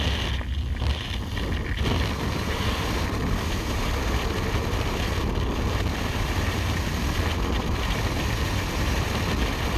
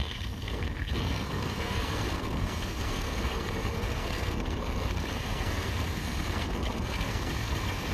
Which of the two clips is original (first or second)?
first